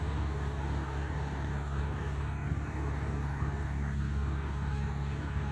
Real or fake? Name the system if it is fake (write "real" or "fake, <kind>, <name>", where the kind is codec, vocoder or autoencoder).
fake, codec, DAC